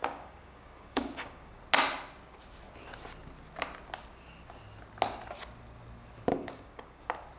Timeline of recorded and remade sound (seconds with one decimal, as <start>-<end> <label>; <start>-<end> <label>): 0.0-1.6 remade; 1.6-6.3 recorded; 6.3-7.0 remade; 7.0-7.4 recorded